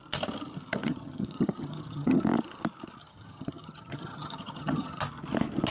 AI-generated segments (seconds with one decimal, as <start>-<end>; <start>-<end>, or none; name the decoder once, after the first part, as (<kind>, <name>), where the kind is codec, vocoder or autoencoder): 0.8-2.2 (vocoder, HiFi-GAN); 3.0-5.0